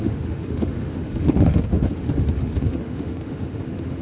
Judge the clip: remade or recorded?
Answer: remade